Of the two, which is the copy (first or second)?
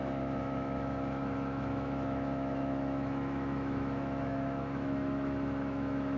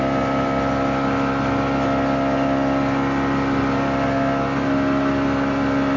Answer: first